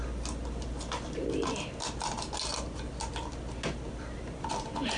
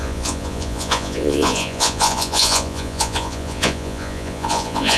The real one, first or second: first